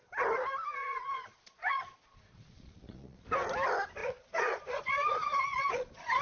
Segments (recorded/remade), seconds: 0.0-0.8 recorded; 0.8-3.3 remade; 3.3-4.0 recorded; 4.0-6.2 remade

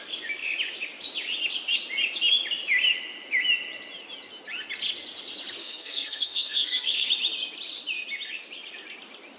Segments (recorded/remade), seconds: 0.0-5.6 recorded; 5.6-7.1 remade; 7.1-9.4 recorded